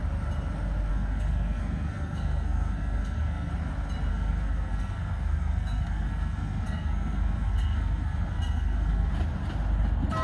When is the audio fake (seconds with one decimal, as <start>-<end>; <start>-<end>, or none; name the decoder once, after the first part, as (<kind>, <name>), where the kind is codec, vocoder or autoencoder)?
0.9-3.5 (codec, SNAC); 4.1-9.1

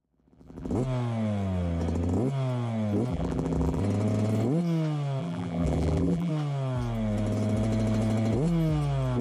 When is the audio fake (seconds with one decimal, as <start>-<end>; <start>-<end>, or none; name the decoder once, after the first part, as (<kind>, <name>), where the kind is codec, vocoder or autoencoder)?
0.0-0.7 (vocoder, BigVGAN v2); 3.1-3.8; 5.2-6.3